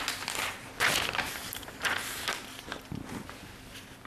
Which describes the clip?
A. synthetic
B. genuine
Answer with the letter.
B